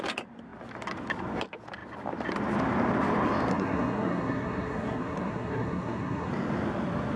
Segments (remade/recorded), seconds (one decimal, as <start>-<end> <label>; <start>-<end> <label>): 0.0-3.5 recorded; 3.5-6.3 remade; 6.3-7.2 recorded